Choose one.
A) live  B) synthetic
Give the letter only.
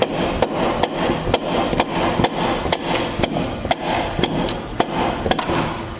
A